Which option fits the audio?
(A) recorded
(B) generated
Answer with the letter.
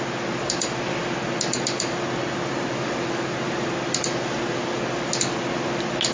A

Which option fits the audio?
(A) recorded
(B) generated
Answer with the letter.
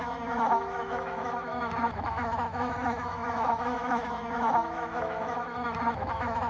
B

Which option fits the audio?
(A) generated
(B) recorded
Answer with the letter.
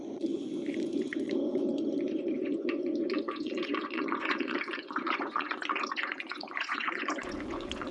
A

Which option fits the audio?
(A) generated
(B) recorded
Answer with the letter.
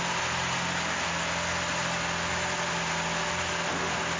B